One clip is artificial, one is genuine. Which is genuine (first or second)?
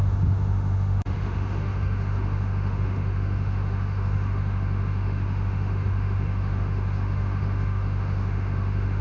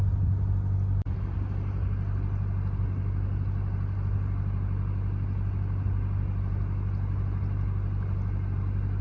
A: second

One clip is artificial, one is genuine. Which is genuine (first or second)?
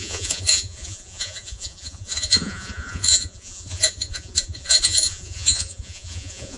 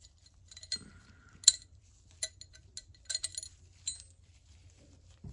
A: second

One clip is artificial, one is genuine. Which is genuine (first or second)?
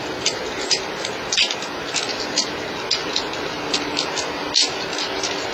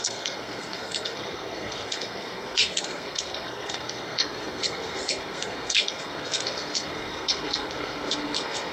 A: first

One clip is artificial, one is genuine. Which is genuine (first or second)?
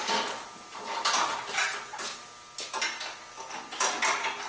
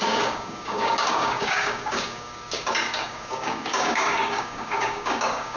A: first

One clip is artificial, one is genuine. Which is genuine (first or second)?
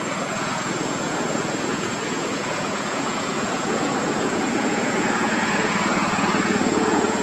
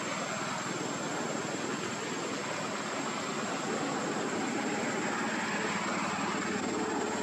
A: second